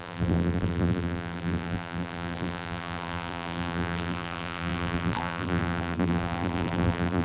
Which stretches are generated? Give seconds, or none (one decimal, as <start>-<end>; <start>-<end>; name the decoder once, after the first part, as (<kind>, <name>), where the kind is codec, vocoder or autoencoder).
0.0-7.2 (vocoder, BigVGAN v2)

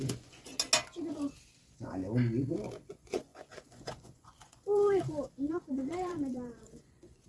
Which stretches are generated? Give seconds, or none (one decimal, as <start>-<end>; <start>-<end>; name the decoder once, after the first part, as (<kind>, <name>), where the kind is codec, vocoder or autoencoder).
0.0-0.5 (vocoder, Vocos); 1.6-2.0; 2.9-7.3

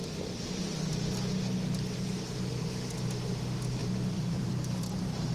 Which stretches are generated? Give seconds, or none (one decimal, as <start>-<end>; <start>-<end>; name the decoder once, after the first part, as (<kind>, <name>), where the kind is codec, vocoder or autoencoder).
0.0-0.9 (vocoder, BigVGAN v2); 3.8-5.3

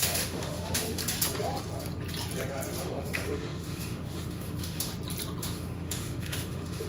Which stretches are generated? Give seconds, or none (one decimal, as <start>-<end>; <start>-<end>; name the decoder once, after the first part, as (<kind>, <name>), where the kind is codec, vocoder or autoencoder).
0.0-1.0 (autoencoder, DAC-VAE); 2.8-4.9; 5.4-6.9

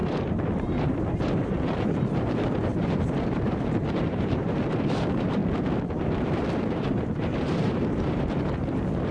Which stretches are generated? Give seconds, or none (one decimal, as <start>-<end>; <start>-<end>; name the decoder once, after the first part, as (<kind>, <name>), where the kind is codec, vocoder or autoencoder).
0.0-5.4 (vocoder, BigVGAN v2); 6.0-9.1

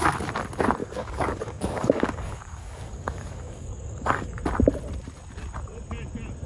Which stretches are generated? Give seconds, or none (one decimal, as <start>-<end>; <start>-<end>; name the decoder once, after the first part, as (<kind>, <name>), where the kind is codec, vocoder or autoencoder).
0.8-4.4 (codec, DAC)